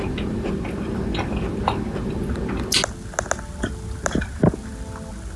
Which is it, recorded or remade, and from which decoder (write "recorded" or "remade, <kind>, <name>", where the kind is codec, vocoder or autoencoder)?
recorded